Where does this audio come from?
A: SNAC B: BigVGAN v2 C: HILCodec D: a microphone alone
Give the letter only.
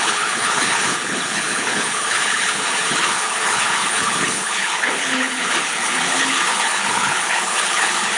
C